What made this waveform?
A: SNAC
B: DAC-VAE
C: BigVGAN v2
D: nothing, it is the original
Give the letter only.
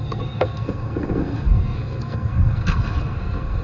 A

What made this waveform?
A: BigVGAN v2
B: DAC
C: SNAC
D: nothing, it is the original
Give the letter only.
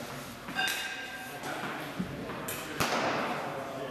D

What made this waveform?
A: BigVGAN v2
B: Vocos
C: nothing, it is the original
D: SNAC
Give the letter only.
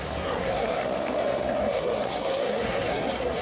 D